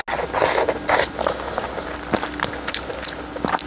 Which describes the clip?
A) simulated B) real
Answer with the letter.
B